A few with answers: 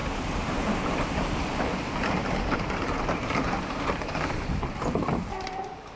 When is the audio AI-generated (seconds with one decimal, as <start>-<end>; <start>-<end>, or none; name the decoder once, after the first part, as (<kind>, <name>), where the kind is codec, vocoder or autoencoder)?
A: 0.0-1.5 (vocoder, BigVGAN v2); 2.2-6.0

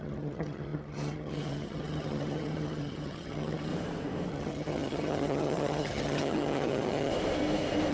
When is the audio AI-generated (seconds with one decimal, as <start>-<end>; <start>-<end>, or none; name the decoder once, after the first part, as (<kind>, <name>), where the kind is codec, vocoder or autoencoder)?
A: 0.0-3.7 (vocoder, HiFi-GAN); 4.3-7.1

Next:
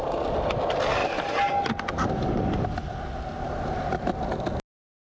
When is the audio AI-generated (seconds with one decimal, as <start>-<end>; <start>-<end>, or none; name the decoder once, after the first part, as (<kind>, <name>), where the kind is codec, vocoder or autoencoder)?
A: none

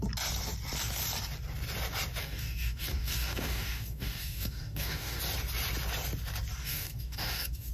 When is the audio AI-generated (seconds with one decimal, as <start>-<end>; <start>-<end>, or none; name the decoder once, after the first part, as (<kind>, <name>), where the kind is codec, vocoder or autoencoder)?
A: 2.2-5.2 (codec, DAC); 6.6-7.7

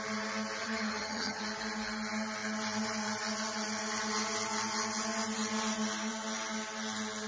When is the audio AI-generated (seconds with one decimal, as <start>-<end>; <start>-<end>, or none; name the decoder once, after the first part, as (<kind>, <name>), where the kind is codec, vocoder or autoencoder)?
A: 0.6-1.4 (vocoder, HiFi-GAN)

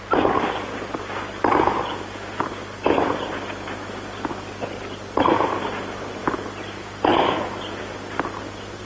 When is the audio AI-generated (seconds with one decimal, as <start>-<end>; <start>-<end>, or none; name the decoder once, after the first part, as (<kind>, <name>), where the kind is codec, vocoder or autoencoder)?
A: none

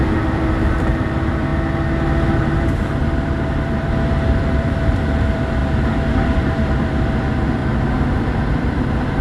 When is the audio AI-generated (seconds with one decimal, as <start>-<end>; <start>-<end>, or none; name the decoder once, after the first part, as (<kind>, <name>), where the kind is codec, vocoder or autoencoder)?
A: 0.0-1.5 (vocoder, BigVGAN v2); 2.4-5.6; 6.1-7.6; 8.2-9.2